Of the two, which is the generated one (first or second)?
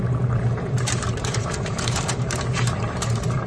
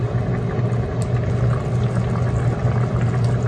first